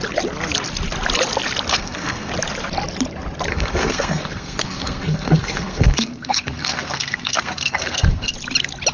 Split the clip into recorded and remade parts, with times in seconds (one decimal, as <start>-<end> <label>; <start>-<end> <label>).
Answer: 0.0-1.7 recorded; 1.7-2.3 remade; 2.3-3.5 recorded; 3.5-8.3 remade; 8.3-8.9 recorded